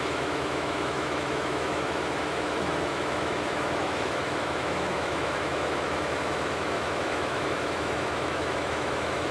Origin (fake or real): fake